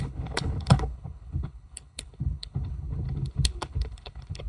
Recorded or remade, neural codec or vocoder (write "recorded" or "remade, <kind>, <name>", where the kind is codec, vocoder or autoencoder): remade, codec, HILCodec